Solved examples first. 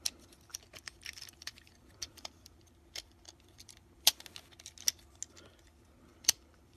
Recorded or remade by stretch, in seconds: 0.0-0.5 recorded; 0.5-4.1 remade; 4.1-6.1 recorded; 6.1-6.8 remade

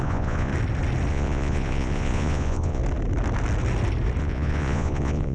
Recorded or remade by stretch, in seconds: 0.0-0.5 remade; 0.5-1.1 recorded; 1.1-2.8 remade; 2.8-4.2 recorded; 4.2-5.3 remade

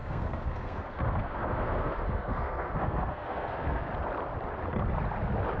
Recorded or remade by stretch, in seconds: 0.0-3.9 remade; 3.9-5.6 recorded

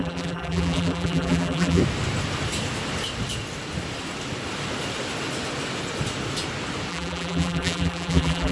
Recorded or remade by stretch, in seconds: 0.0-1.8 remade; 1.8-6.9 recorded; 6.9-8.5 remade

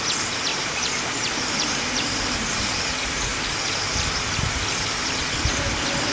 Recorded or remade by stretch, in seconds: 0.0-0.5 recorded; 0.5-2.6 remade; 2.6-3.3 recorded; 3.3-3.8 remade; 3.8-6.1 recorded

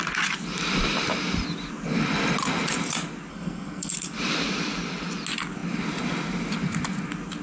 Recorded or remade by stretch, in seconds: 0.0-3.3 recorded; 3.3-3.9 remade; 3.9-7.4 recorded

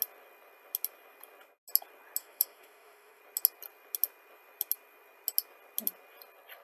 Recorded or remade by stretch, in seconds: 0.0-2.2 recorded; 2.2-3.2 remade; 3.2-6.6 recorded

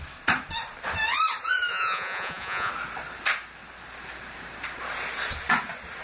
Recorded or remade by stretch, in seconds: 0.0-1.7 recorded; 1.7-2.7 remade; 2.7-6.0 recorded